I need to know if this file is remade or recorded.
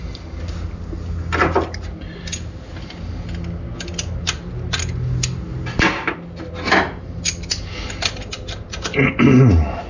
recorded